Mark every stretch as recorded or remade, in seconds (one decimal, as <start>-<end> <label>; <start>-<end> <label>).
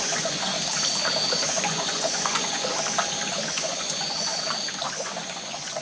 0.0-0.5 remade; 0.5-1.5 recorded; 1.5-2.7 remade; 2.7-3.5 recorded; 3.5-4.3 remade; 4.3-5.0 recorded; 5.0-5.8 remade